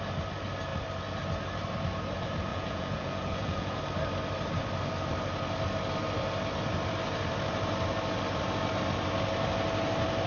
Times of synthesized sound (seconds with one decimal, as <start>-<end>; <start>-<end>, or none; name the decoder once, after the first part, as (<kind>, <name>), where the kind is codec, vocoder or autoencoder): 2.5-3.8 (vocoder, Vocos)